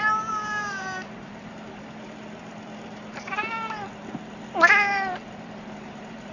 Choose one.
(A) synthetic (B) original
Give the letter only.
A